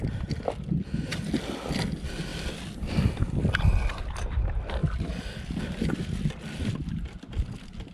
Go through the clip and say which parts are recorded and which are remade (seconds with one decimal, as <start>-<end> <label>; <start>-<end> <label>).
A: 0.0-7.9 recorded